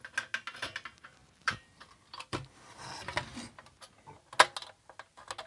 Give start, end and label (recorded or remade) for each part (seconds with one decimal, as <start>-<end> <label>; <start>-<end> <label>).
0.0-1.2 recorded; 1.2-3.7 remade; 3.7-5.5 recorded